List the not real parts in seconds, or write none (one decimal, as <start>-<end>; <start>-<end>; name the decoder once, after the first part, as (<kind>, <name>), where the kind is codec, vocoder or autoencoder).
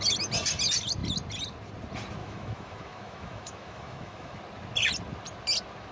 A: 2.2-4.4 (autoencoder, DAC-VAE)